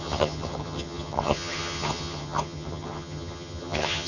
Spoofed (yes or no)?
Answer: yes